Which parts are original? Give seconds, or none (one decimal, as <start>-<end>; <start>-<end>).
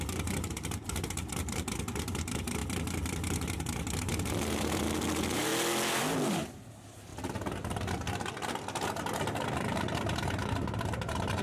2.6-4.0; 5.5-6.3; 7.1-9.0